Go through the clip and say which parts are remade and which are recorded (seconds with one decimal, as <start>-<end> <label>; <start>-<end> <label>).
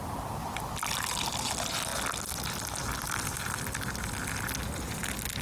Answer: 0.0-5.4 recorded